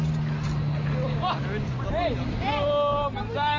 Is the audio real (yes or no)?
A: yes